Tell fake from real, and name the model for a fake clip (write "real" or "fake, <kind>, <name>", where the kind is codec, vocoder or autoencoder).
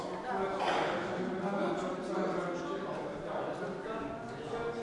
real